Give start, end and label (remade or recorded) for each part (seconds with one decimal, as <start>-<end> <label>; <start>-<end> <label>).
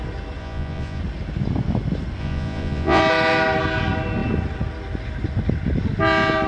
0.0-0.4 recorded; 0.4-1.0 remade; 1.0-2.2 recorded; 2.2-3.0 remade; 3.0-6.5 recorded